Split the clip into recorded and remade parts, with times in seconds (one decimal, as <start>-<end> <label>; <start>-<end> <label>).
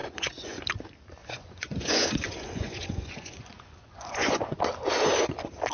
0.0-0.6 remade; 0.6-1.2 recorded; 1.2-4.6 remade; 4.6-5.7 recorded